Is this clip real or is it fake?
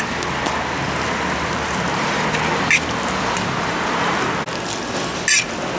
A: real